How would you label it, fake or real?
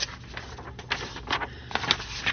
real